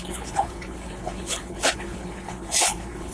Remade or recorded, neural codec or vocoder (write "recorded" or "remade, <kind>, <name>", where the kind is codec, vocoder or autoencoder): remade, codec, HILCodec